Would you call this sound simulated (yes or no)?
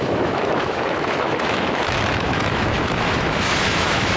yes